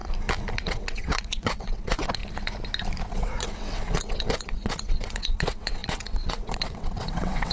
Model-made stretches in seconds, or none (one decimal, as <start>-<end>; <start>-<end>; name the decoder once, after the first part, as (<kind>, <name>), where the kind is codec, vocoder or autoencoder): 0.5-2.2 (vocoder, WaveNeXt); 3.1-7.5